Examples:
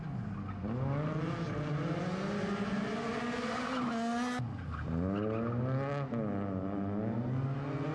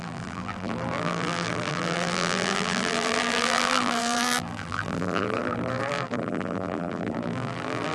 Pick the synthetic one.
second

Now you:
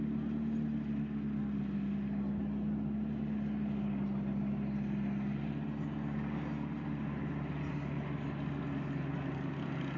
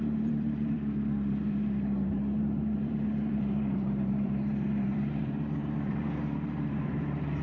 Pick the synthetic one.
second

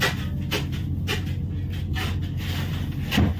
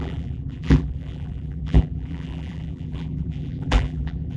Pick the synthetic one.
second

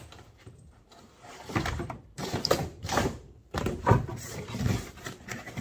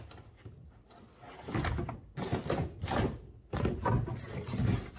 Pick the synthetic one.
first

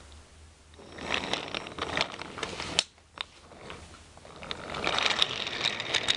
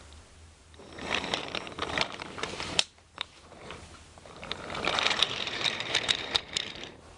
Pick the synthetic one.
second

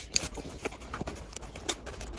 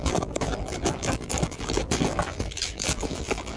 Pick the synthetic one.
second